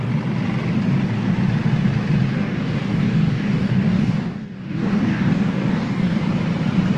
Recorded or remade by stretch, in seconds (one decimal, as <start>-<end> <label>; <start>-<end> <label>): 0.0-2.3 recorded; 2.3-6.2 remade; 6.2-7.0 recorded